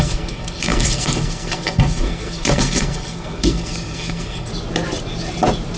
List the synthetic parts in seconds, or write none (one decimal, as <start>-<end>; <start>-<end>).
0.0-4.5